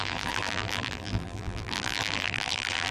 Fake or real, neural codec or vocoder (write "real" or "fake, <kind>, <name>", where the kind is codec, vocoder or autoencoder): fake, vocoder, BigVGAN v2